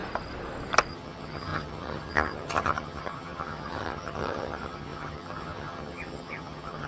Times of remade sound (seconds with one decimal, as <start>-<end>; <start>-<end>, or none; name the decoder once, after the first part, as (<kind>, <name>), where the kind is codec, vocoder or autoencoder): 0.9-6.9 (vocoder, HiFi-GAN)